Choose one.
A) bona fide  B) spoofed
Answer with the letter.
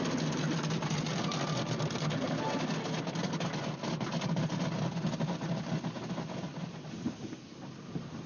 A